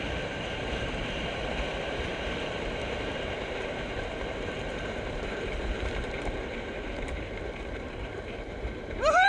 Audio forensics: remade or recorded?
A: remade